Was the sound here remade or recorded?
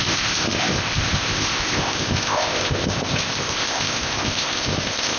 remade